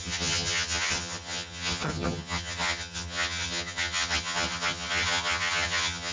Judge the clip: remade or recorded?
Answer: remade